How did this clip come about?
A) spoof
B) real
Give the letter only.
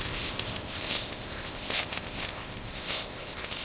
A